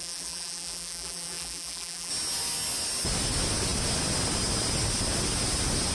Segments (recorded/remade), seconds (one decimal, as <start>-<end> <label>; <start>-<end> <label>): 0.0-2.1 remade; 2.1-5.9 recorded